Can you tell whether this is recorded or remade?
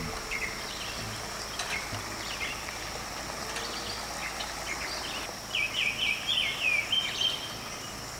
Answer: recorded